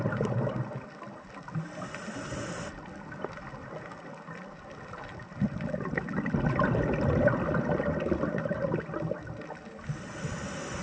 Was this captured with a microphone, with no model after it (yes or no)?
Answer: yes